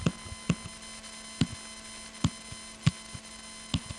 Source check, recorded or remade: recorded